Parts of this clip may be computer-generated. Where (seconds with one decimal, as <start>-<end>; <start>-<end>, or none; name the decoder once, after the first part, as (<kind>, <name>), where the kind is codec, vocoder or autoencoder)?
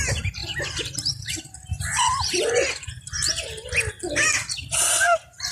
0.4-3.7 (vocoder, BigVGAN v2)